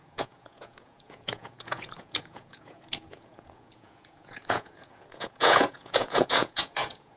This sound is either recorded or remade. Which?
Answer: remade